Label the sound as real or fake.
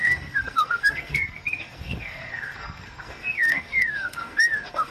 fake